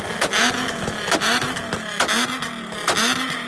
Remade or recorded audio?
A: recorded